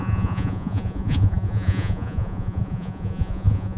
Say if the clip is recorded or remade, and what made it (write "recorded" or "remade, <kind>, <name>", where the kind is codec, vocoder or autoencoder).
remade, vocoder, Vocos